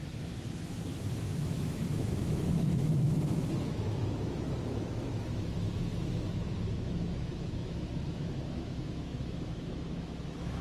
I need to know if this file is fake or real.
fake